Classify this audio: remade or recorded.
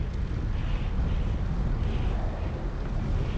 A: recorded